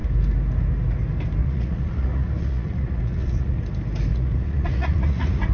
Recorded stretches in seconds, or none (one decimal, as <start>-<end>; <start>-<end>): 0.0-1.4; 3.6-4.1